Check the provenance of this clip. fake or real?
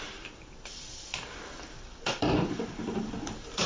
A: fake